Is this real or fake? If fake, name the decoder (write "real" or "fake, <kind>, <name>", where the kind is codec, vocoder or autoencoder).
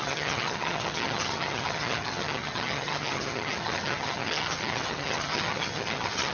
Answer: fake, vocoder, HiFi-GAN